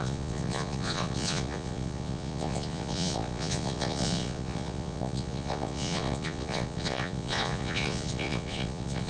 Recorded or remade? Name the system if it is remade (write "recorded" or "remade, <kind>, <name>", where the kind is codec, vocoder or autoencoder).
remade, vocoder, Vocos